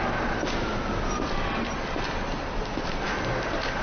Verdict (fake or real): real